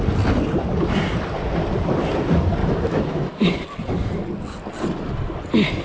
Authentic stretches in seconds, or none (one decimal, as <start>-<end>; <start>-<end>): 0.0-2.6; 3.6-5.8

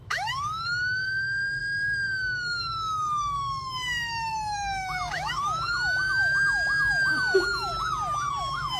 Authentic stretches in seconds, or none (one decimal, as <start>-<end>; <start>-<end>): 7.7-8.4

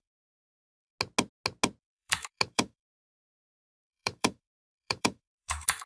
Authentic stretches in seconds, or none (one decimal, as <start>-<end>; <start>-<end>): 0.9-1.8